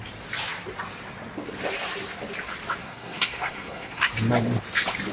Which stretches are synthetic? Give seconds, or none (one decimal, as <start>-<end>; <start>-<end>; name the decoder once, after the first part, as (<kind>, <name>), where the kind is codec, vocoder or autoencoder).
2.8-4.1 (codec, SNAC)